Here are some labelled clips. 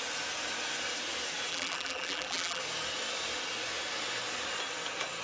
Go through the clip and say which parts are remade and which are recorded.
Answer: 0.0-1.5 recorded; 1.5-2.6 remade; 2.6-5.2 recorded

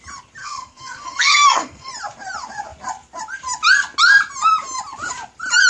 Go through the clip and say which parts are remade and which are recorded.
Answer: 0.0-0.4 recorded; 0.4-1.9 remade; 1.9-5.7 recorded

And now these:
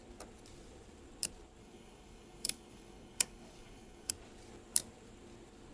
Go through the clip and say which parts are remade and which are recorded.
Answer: 0.0-1.6 recorded; 1.6-4.1 remade; 4.1-5.7 recorded